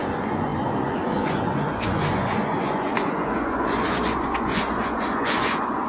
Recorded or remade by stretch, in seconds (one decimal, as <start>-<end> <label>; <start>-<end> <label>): 0.0-5.9 remade